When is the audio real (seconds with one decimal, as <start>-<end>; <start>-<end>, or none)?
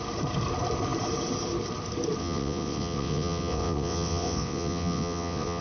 0.0-2.2